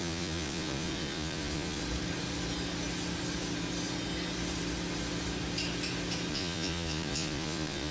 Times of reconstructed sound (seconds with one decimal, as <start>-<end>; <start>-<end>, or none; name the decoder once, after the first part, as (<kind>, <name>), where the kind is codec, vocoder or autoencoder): 0.0-1.8 (vocoder, Vocos); 6.3-7.9